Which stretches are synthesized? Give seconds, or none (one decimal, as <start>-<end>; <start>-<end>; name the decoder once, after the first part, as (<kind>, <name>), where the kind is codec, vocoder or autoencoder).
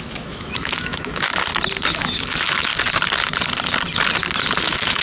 0.0-1.3 (autoencoder, DAC-VAE); 1.9-2.7; 4.6-5.0